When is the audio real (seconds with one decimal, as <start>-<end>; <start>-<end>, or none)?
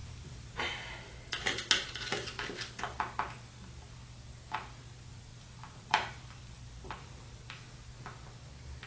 0.0-5.3; 7.2-8.9